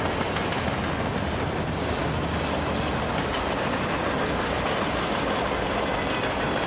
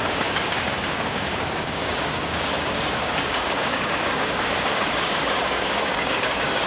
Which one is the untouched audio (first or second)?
first